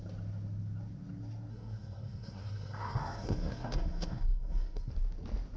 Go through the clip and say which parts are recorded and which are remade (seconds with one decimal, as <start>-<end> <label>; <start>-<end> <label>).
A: 0.0-1.5 recorded; 1.5-4.9 remade; 4.9-5.6 recorded